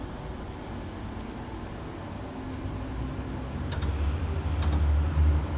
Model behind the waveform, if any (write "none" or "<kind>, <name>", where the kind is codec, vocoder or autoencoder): none